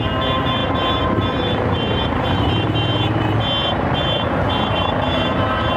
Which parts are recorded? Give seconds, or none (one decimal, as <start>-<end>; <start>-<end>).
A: none